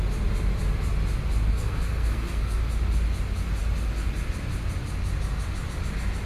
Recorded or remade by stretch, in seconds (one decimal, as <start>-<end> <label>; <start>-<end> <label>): 0.0-1.5 recorded; 1.5-2.6 remade; 2.6-6.3 recorded